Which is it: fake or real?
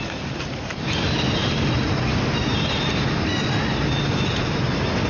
real